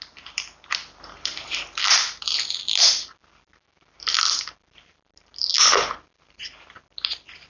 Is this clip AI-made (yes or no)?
no